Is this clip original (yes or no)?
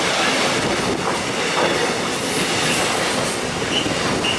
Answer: yes